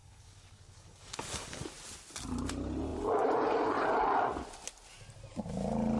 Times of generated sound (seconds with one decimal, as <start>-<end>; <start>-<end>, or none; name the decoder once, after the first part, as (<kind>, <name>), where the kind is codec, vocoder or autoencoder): 0.0-1.6 (codec, DAC)